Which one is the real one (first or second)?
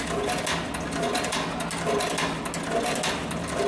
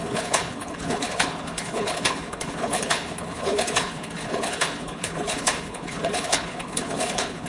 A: first